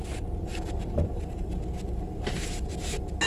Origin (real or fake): real